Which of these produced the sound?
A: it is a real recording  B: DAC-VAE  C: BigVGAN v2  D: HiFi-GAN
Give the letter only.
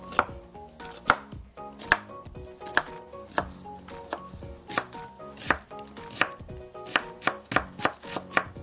A